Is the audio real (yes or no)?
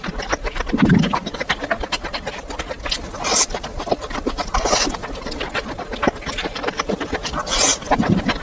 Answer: yes